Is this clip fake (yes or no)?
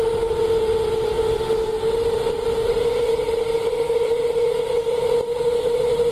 no